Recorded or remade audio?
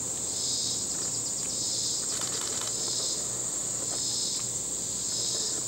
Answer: recorded